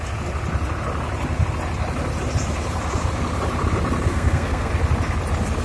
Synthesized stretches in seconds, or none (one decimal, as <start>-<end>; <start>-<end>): 4.1-4.7